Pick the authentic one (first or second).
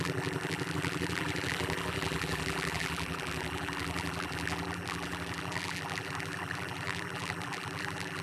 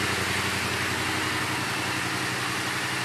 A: second